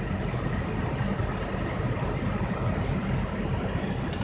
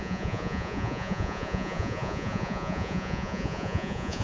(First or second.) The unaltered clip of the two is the first